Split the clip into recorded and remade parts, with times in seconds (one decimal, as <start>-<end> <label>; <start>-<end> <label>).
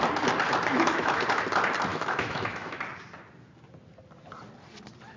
0.0-0.7 recorded; 0.7-1.2 remade; 1.2-1.9 recorded; 1.9-2.8 remade; 2.8-5.2 recorded